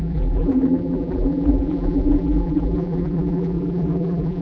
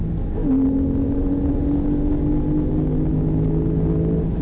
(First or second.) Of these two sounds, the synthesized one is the first